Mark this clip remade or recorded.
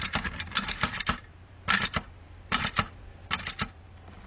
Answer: recorded